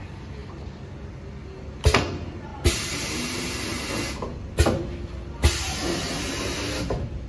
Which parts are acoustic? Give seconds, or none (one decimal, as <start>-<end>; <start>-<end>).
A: 0.0-7.3